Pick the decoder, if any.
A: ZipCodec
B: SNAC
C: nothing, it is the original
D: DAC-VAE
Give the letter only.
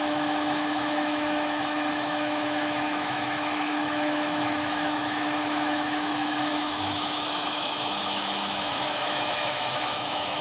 D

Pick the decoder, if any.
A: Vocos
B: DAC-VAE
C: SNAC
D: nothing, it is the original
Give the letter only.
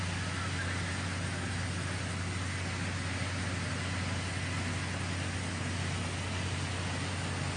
D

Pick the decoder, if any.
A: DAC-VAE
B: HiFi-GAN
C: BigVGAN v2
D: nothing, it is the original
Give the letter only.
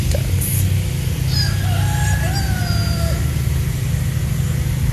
D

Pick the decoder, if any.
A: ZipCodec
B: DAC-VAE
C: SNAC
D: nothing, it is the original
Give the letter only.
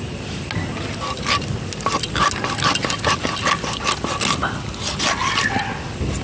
D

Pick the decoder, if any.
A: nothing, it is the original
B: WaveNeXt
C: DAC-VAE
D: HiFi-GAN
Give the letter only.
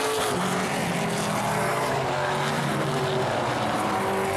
A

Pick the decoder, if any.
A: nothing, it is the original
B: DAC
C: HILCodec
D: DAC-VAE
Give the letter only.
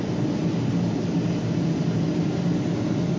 A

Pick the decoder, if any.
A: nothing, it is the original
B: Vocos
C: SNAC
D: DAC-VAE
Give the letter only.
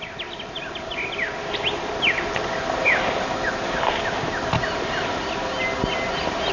A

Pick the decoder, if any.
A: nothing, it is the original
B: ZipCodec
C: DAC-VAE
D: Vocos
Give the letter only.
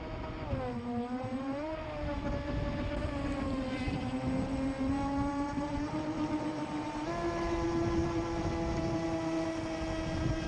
A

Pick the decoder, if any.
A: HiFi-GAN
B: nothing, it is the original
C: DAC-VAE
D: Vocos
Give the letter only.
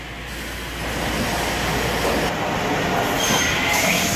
B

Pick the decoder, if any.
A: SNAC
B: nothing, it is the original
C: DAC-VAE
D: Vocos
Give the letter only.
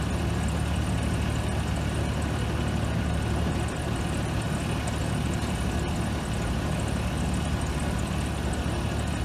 B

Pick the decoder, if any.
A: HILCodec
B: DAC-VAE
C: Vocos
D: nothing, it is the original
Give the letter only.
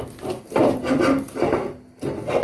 D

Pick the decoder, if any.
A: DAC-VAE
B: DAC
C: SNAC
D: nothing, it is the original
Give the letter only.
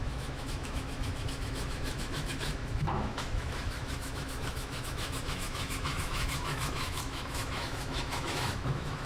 A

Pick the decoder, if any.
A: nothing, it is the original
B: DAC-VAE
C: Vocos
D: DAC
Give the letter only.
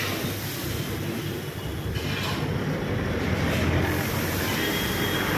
A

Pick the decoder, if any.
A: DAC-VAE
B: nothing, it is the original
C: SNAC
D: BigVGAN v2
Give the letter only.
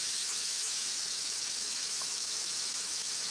A